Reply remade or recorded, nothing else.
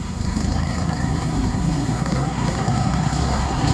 remade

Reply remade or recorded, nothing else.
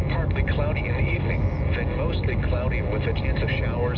recorded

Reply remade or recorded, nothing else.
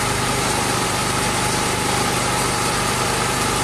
recorded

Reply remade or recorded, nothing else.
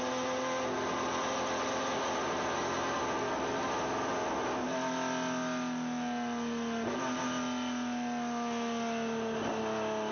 recorded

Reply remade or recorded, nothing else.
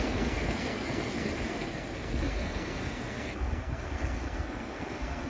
remade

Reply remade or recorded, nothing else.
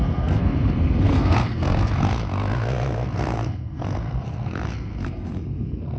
remade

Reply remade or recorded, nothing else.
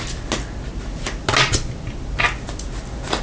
recorded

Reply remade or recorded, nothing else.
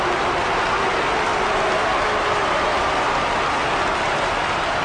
recorded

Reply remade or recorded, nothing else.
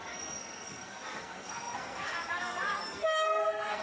remade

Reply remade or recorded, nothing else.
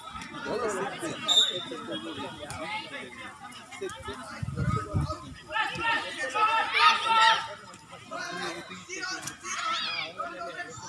recorded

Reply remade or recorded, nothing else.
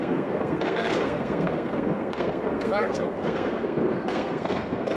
remade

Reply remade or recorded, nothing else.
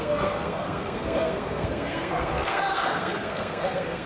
remade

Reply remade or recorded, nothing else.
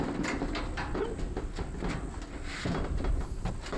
recorded